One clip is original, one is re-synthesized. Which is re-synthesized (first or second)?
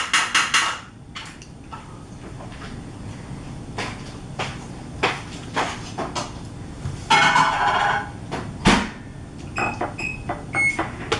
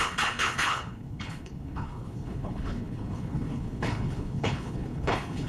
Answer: second